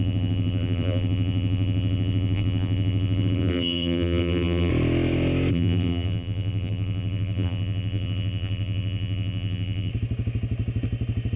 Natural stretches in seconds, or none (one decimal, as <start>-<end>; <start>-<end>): 4.7-5.5; 9.9-11.4